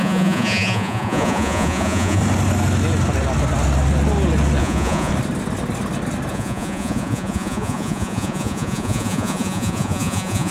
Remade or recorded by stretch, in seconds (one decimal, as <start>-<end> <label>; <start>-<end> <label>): 0.0-2.2 remade; 2.2-4.6 recorded; 4.6-5.1 remade; 5.1-6.3 recorded; 6.3-10.5 remade

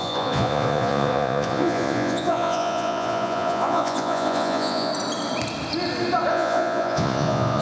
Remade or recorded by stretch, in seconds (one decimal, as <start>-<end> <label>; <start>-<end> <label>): 0.0-4.9 remade; 4.9-6.3 recorded; 6.3-7.6 remade

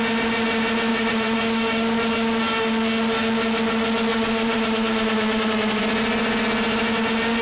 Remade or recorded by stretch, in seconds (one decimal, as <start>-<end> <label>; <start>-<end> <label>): 0.0-0.9 recorded; 0.9-1.4 remade; 1.4-4.1 recorded; 4.1-5.8 remade; 5.8-7.4 recorded

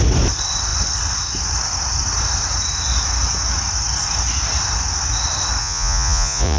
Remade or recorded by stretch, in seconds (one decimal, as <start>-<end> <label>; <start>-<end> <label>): 0.0-5.6 recorded; 5.6-6.6 remade